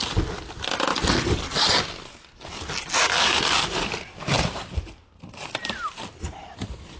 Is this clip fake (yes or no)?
no